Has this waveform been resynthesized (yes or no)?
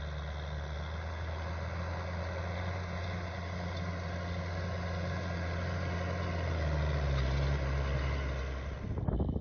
no